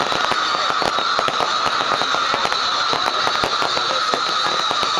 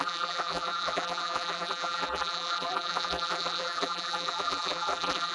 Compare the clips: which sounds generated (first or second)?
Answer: second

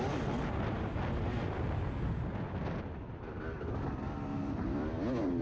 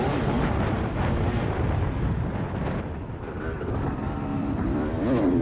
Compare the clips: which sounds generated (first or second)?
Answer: second